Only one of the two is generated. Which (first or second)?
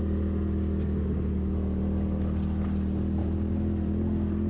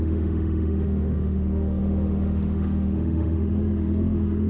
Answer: second